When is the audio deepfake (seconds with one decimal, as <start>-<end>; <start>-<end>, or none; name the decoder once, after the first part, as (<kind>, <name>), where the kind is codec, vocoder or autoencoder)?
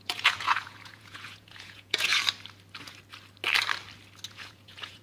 0.0-2.1 (vocoder, Vocos); 4.3-5.0